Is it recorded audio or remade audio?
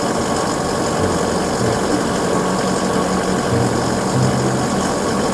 recorded